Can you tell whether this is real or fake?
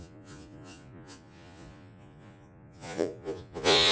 fake